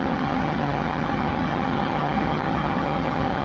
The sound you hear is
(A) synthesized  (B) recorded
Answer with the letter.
A